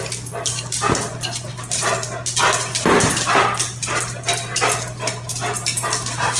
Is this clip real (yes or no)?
yes